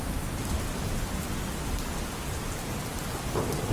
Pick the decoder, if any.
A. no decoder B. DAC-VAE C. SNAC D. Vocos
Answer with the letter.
A